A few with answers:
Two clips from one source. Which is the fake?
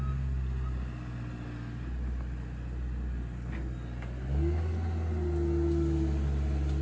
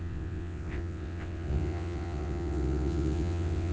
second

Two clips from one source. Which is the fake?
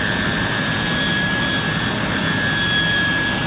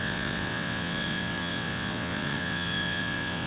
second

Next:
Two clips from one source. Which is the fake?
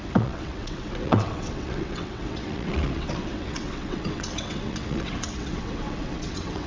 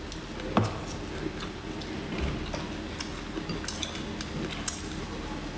first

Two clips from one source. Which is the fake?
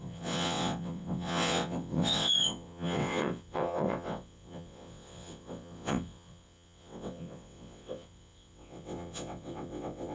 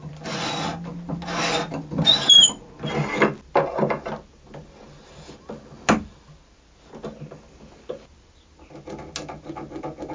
first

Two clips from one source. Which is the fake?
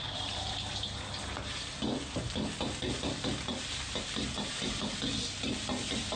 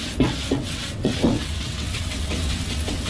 second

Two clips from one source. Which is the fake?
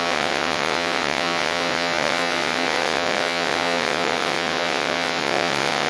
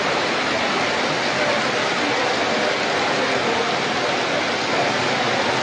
first